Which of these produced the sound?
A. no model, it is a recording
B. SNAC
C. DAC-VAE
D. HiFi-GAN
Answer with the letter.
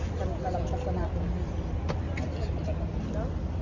A